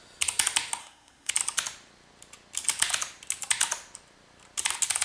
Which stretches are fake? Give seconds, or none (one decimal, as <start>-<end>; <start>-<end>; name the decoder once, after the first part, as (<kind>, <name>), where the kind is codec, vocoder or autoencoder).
0.8-1.3 (codec, SNAC)

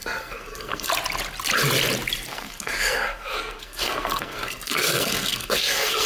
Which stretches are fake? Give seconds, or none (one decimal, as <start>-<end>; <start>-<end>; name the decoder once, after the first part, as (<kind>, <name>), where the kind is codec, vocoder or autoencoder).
0.0-0.9 (codec, SNAC); 2.3-6.1